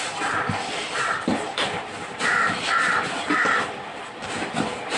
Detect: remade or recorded remade